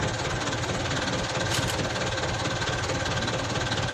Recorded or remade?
recorded